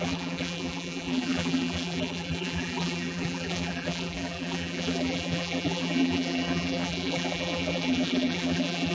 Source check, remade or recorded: remade